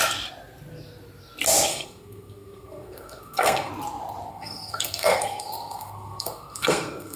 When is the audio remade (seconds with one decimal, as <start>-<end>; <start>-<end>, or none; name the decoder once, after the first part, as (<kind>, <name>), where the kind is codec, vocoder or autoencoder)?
1.7-3.7 (codec, SNAC); 4.3-7.2